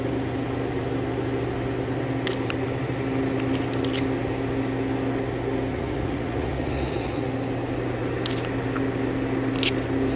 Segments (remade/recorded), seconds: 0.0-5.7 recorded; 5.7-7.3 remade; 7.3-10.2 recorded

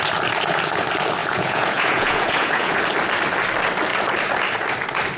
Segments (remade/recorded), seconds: 0.0-1.2 recorded; 1.2-2.8 remade; 2.8-5.2 recorded